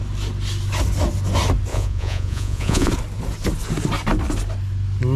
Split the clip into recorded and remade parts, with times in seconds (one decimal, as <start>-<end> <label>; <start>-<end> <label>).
0.0-1.7 recorded; 1.7-2.9 remade; 2.9-5.2 recorded